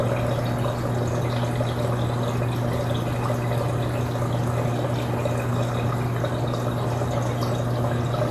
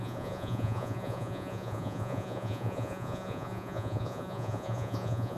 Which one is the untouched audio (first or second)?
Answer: first